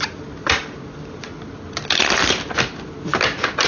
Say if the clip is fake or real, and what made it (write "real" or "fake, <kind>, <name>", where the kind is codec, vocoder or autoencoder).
real